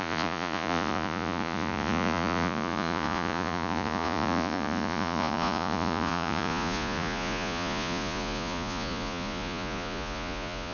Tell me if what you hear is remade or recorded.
remade